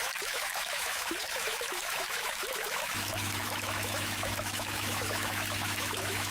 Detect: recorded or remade remade